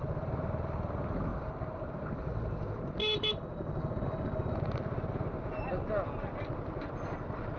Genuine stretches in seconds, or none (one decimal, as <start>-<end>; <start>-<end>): 0.0-3.0; 4.6-7.6